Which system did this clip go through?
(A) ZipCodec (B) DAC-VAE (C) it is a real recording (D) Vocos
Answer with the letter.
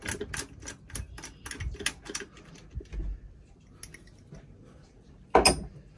C